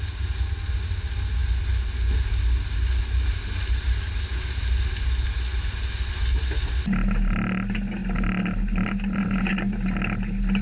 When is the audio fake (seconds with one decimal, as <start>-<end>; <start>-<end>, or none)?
none